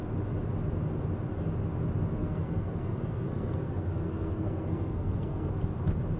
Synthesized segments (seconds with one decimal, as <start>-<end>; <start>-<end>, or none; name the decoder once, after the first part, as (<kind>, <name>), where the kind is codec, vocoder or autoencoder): 2.2-5.5 (codec, SNAC)